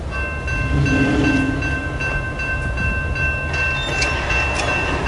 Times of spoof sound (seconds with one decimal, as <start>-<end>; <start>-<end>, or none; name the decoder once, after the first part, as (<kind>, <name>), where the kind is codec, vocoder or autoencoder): none